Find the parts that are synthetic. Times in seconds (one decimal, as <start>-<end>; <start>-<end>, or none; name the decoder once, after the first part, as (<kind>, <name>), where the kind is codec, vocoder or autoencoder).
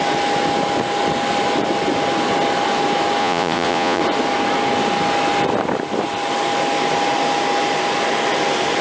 3.2-4.0 (vocoder, Vocos)